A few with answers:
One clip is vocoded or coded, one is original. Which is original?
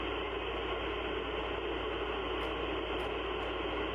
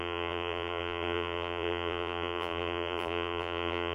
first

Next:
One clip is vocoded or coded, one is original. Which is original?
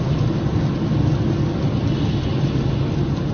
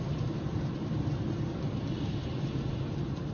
first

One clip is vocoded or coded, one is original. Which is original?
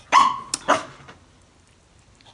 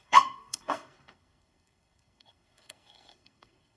first